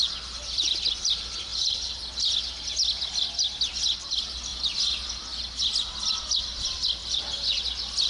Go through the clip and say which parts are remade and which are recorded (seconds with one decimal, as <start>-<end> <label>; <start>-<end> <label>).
0.0-1.5 recorded; 1.5-2.3 remade; 2.3-7.0 recorded; 7.0-7.6 remade; 7.6-8.1 recorded